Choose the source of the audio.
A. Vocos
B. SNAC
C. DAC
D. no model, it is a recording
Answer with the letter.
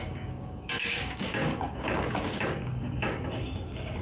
C